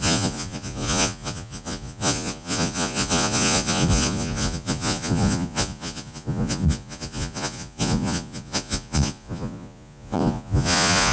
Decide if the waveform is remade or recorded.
remade